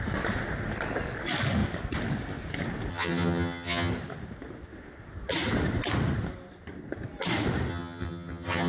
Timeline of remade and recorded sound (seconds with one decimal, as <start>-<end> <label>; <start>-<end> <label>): 0.0-2.9 recorded; 2.9-3.9 remade; 3.9-7.7 recorded; 7.7-8.7 remade